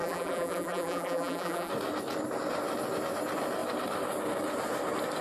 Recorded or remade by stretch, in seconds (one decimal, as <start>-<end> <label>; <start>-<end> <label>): 0.0-1.7 remade; 1.7-5.2 recorded